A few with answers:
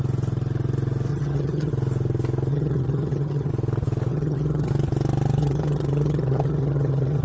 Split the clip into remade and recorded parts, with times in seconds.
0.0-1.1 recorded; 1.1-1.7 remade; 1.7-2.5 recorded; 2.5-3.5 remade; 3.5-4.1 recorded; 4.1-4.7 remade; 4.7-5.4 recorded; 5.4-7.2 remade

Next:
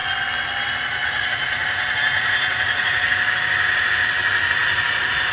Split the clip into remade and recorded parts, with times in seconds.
0.0-1.0 recorded; 1.0-3.0 remade; 3.0-4.6 recorded; 4.6-5.3 remade